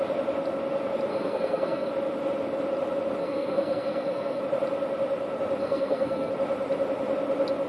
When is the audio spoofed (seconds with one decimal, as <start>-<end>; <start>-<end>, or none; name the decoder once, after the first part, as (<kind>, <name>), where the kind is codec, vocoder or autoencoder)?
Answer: 1.1-1.9 (codec, SNAC); 3.2-4.4; 5.6-6.3